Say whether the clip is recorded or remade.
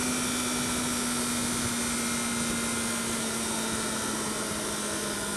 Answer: recorded